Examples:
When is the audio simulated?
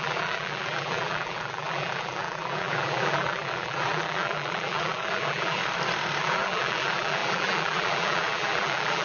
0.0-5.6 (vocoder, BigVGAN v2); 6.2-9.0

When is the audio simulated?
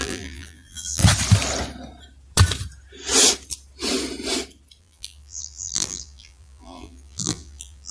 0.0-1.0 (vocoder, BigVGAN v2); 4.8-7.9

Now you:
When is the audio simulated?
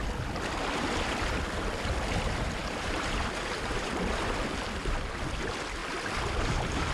2.6-3.9 (vocoder, BigVGAN v2)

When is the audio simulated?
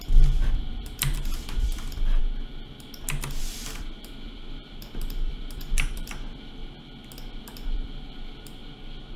0.0-2.2 (vocoder, BigVGAN v2); 3.4-6.6; 7.4-8.6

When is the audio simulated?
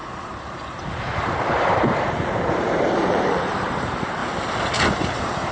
0.0-4.2 (vocoder, BigVGAN v2); 4.8-5.5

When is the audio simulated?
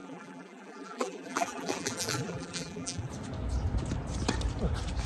0.0-3.1 (vocoder, BigVGAN v2)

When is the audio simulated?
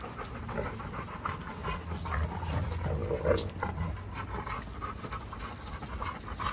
3.0-3.9 (vocoder, BigVGAN v2)